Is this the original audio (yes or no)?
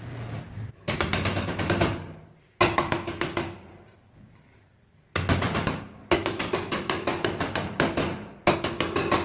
yes